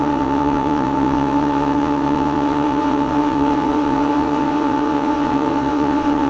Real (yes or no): no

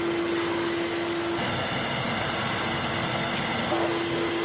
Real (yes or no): yes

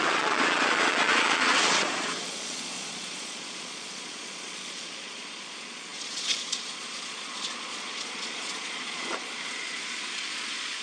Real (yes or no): no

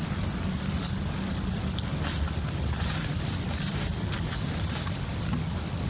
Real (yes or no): yes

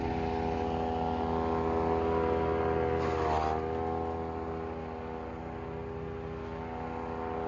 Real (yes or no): yes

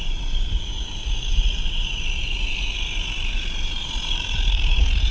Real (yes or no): no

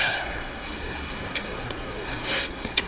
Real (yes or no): no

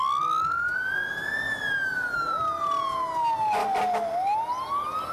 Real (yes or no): yes